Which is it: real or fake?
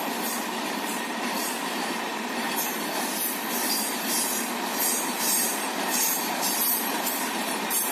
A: fake